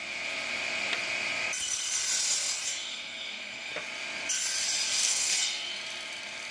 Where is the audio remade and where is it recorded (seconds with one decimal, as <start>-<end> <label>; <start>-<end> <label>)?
0.0-2.8 recorded; 2.8-3.7 remade; 3.7-5.0 recorded; 5.0-5.7 remade; 5.7-6.5 recorded